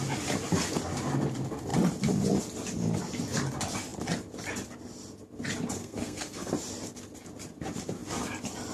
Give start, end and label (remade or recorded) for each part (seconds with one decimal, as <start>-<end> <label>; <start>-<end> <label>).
0.0-5.8 recorded; 5.8-6.5 remade; 6.5-8.7 recorded